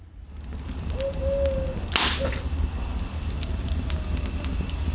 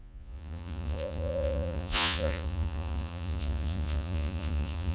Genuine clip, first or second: first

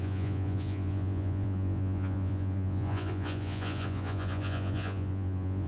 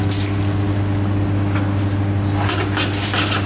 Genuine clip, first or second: second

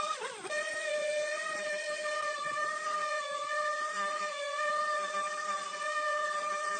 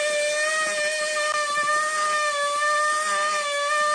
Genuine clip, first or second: second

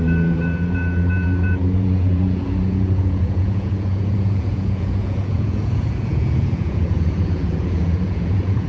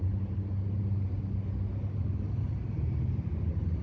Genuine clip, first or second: second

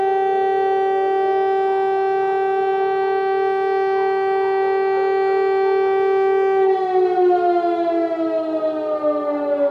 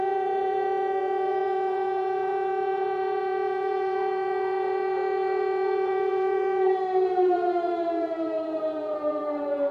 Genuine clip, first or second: first